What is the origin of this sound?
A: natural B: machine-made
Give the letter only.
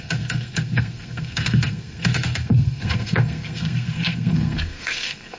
B